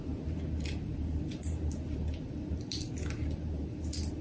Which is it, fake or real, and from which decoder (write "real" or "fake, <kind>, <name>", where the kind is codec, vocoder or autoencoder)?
real